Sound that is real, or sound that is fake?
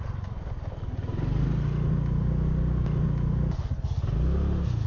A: real